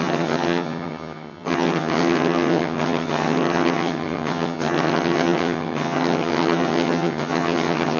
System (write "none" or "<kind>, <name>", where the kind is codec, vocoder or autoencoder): vocoder, HiFi-GAN